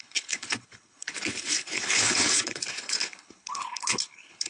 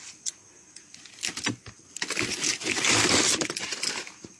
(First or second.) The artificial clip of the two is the first